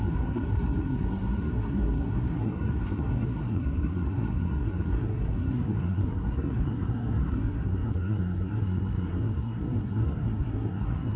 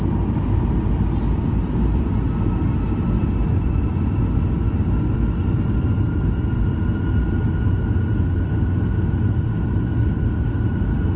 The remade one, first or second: first